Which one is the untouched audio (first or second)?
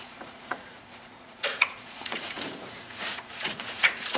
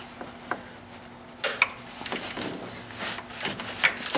second